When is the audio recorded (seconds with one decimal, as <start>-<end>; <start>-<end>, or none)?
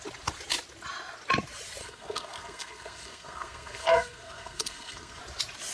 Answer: 0.0-1.8; 5.2-5.7